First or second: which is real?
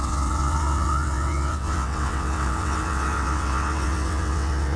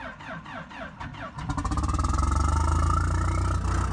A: second